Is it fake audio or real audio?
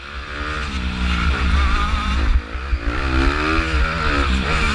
real